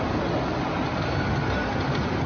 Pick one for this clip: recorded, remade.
recorded